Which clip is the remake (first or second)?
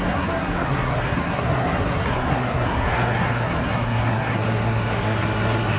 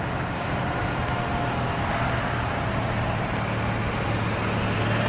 first